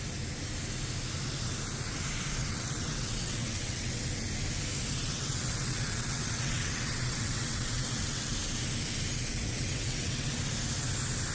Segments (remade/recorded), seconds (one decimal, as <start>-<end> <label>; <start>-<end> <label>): 0.0-2.4 recorded; 2.4-4.0 remade; 4.0-5.0 recorded; 5.0-8.3 remade; 8.3-9.1 recorded; 9.1-10.3 remade; 10.3-11.3 recorded